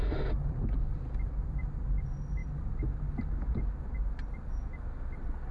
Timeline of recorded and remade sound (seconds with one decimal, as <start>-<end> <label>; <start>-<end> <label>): 0.0-5.5 recorded